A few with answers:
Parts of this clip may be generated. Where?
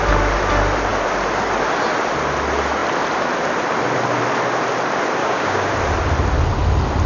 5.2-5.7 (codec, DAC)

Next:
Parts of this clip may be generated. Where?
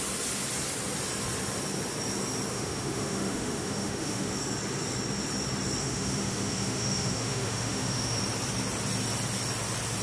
2.5-4.3 (autoencoder, DAC-VAE); 5.8-8.2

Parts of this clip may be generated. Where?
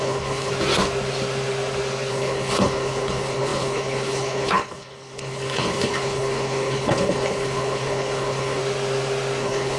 0.0-0.5 (codec, HILCodec); 2.1-8.6; 9.4-9.8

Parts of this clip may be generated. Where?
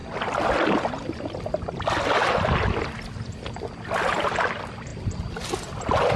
none